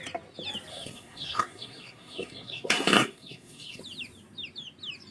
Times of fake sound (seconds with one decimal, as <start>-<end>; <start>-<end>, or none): 0.7-3.8